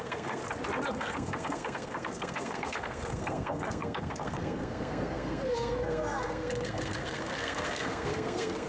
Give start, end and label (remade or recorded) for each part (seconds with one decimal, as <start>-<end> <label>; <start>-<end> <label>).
0.0-0.4 remade; 0.4-0.9 recorded; 0.9-8.7 remade

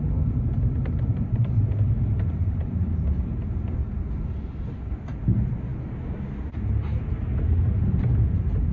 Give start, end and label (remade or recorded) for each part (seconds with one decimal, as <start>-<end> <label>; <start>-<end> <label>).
0.0-8.7 recorded